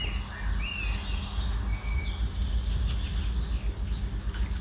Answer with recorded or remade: recorded